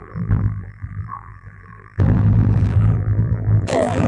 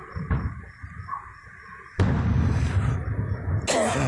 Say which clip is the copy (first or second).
first